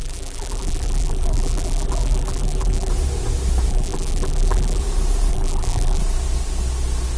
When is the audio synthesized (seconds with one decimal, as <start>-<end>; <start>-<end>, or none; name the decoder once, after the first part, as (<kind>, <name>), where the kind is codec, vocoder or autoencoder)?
0.0-2.9 (vocoder, BigVGAN v2); 3.7-4.8; 5.3-6.0